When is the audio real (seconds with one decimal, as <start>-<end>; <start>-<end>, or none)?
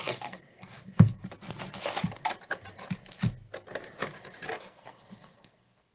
1.2-4.6